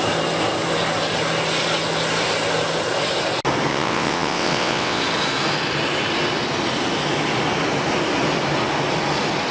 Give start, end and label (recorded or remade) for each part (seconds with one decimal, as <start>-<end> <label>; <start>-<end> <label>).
0.0-3.7 recorded; 3.7-5.0 remade; 5.0-9.5 recorded